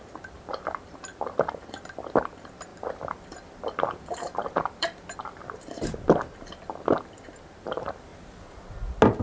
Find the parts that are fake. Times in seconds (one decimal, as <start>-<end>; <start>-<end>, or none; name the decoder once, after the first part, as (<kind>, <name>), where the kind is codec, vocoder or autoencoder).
0.0-8.1 (vocoder, BigVGAN v2)

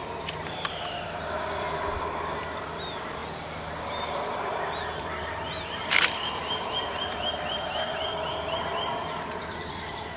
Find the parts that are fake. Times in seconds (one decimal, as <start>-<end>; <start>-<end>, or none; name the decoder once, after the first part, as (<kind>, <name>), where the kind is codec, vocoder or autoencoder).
0.0-3.2 (vocoder, BigVGAN v2); 3.9-10.2

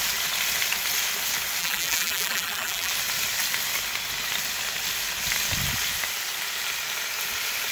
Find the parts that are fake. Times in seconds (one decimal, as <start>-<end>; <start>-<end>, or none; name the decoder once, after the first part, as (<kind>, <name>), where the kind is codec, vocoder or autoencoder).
1.6-2.9 (vocoder, BigVGAN v2)

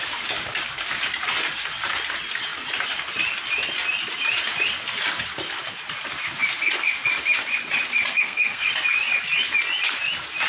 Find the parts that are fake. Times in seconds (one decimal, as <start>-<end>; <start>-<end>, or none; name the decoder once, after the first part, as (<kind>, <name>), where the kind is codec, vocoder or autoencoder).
8.1-8.7 (codec, SNAC)

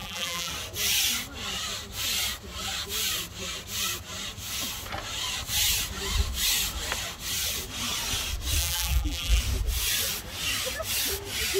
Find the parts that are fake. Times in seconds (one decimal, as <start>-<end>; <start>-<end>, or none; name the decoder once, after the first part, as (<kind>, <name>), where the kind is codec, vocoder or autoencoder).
0.0-0.5 (vocoder, BigVGAN v2); 8.6-9.4